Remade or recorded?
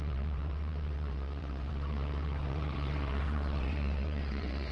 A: remade